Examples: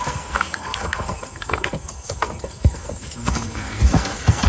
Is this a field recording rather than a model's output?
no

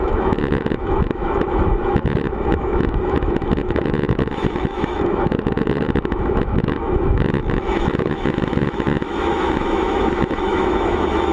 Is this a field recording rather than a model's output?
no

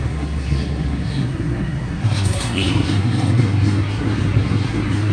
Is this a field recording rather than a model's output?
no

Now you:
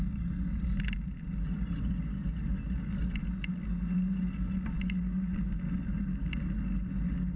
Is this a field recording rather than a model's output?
yes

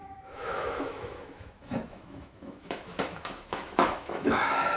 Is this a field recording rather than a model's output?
no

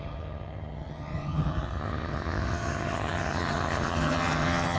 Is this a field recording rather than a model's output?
no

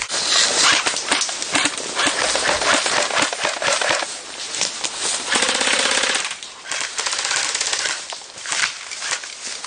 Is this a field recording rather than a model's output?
yes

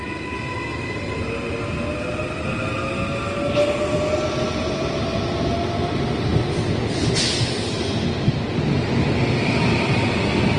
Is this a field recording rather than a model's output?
yes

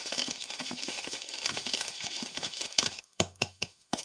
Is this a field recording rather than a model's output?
no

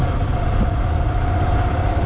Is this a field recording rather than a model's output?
yes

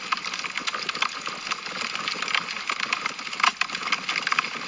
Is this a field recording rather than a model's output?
yes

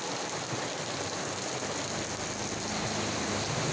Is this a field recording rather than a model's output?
yes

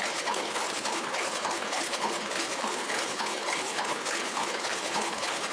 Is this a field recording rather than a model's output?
no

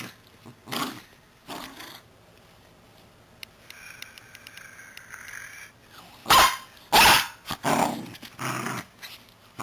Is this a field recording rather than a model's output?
yes